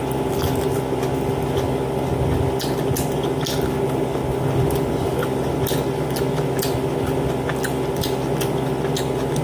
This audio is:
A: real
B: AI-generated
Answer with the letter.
A